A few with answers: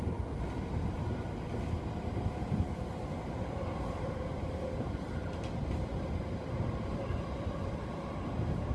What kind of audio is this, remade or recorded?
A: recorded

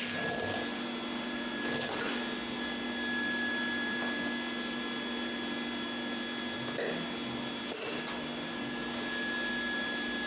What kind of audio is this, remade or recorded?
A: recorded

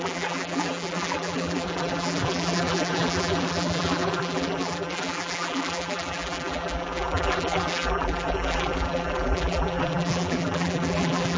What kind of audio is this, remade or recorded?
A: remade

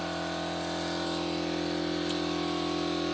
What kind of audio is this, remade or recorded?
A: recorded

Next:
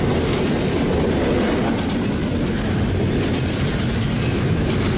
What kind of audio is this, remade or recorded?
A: recorded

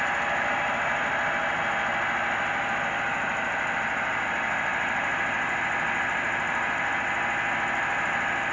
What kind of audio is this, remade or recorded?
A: recorded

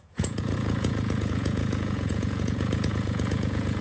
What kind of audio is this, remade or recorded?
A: remade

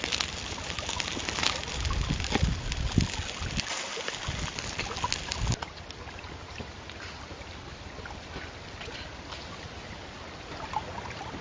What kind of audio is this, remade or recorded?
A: recorded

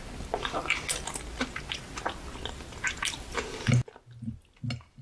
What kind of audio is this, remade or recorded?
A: recorded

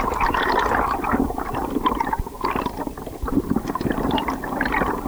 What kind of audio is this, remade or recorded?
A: recorded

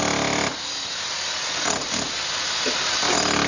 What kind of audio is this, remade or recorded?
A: recorded